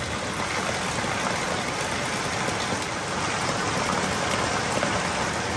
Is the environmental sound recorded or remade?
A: recorded